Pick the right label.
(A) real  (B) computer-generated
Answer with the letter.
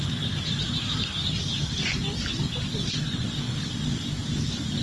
A